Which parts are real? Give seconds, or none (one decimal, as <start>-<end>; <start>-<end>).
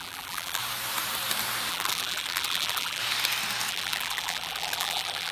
0.6-1.7; 3.0-3.7